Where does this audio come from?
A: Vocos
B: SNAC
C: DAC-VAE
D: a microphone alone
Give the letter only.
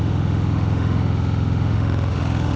C